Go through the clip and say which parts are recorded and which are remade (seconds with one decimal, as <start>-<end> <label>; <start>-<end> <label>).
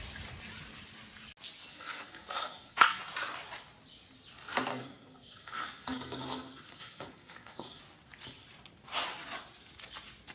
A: 0.0-1.7 recorded; 1.7-3.0 remade; 3.0-4.7 recorded; 4.7-7.8 remade; 7.8-10.3 recorded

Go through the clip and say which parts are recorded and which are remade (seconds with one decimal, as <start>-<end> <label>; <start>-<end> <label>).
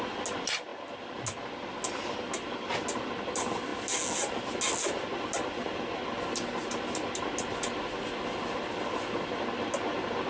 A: 0.0-10.3 recorded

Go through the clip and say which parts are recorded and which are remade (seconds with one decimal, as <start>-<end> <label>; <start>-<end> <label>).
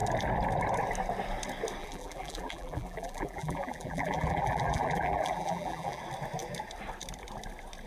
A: 0.0-1.8 recorded; 1.8-6.0 remade; 6.0-7.9 recorded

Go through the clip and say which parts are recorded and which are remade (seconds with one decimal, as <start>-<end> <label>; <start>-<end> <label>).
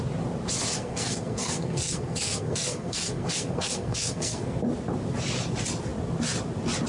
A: 0.0-0.7 recorded; 0.7-4.6 remade; 4.6-6.9 recorded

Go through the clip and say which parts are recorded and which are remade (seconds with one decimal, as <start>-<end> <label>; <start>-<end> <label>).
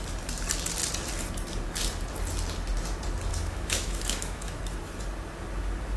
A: 0.0-3.3 recorded; 3.3-4.6 remade; 4.6-6.0 recorded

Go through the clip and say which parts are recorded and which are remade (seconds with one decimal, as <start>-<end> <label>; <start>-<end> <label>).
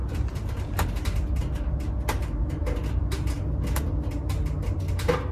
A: 0.0-5.3 recorded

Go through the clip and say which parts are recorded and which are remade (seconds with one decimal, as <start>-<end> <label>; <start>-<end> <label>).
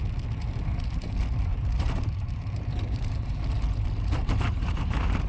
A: 0.0-1.5 recorded; 1.5-3.4 remade; 3.4-4.2 recorded; 4.2-5.3 remade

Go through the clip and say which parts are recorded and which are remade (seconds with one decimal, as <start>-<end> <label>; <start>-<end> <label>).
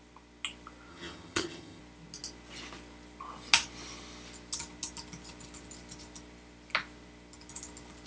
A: 0.0-0.9 recorded; 0.9-1.8 remade; 1.8-8.1 recorded